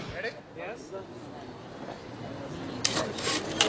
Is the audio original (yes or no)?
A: yes